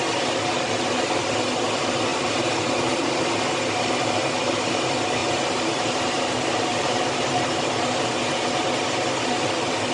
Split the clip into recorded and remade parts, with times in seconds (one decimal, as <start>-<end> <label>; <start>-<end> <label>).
0.0-2.1 recorded; 2.1-3.2 remade; 3.2-5.2 recorded; 5.2-8.7 remade; 8.7-9.9 recorded